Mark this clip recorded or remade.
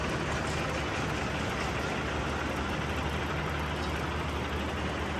recorded